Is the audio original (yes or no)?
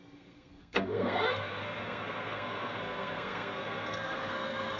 no